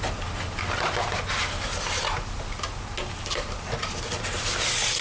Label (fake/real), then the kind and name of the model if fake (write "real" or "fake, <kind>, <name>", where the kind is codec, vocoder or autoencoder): real